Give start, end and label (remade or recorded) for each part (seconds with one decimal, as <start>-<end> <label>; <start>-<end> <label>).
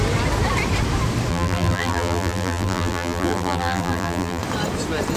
0.0-1.3 recorded; 1.3-4.4 remade; 4.4-5.2 recorded